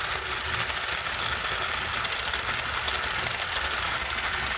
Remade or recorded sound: recorded